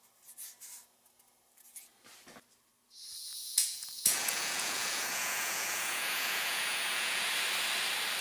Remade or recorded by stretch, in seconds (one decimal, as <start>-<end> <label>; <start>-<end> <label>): 0.0-3.3 recorded; 3.3-7.3 remade; 7.3-8.2 recorded